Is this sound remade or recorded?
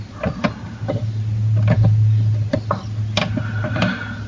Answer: recorded